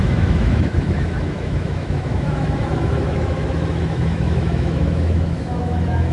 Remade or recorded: remade